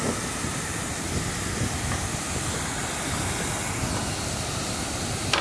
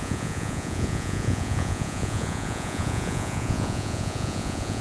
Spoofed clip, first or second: second